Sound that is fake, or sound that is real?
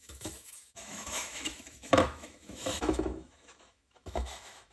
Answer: fake